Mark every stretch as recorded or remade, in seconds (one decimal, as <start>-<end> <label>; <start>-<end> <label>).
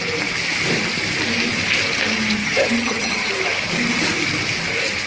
0.0-2.4 recorded; 2.4-3.3 remade; 3.3-5.1 recorded